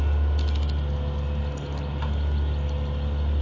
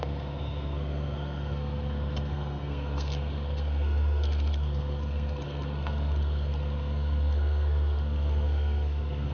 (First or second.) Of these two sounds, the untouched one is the first